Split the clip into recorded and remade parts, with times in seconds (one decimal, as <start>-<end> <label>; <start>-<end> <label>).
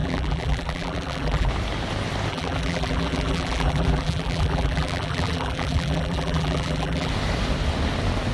0.0-1.5 remade; 1.5-2.3 recorded; 2.3-7.1 remade; 7.1-8.3 recorded